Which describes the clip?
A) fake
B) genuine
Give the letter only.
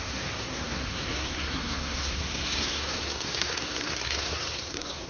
A